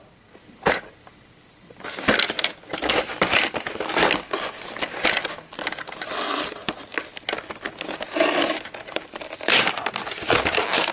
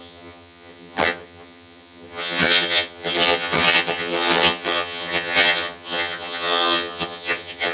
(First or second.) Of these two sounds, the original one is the first